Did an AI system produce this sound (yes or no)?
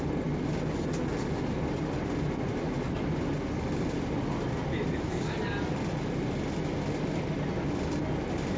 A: no